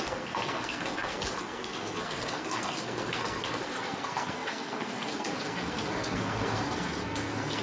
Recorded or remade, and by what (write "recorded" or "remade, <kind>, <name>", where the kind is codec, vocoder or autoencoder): remade, codec, SNAC